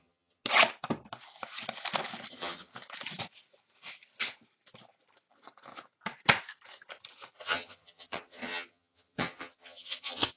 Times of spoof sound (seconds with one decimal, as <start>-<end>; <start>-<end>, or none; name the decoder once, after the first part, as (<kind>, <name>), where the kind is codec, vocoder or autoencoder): 0.0-0.4 (vocoder, HiFi-GAN); 2.3-2.7; 7.4-10.4